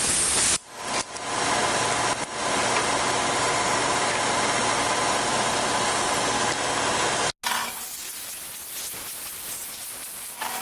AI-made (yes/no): no